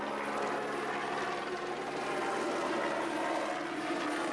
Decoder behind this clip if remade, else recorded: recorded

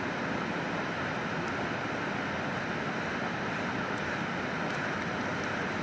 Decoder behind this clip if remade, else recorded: recorded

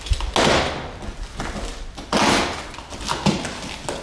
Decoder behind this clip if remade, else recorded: recorded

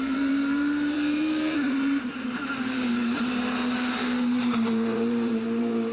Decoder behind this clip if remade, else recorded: remade, vocoder, BigVGAN v2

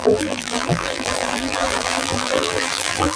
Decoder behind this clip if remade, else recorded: remade, vocoder, BigVGAN v2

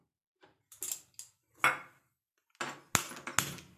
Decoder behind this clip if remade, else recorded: recorded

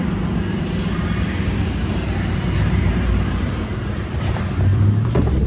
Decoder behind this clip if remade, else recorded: remade, vocoder, BigVGAN v2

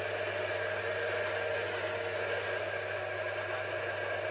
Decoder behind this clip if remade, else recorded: recorded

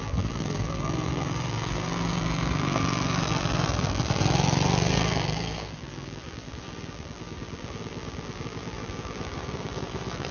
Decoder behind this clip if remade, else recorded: remade, vocoder, BigVGAN v2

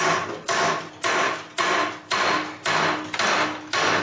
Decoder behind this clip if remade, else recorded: recorded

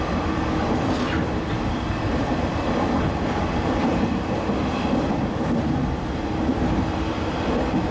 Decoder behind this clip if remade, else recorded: remade, vocoder, BigVGAN v2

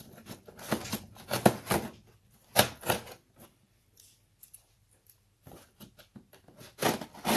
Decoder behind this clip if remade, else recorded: remade, vocoder, BigVGAN v2